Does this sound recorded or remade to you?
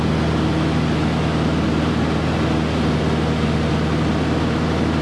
recorded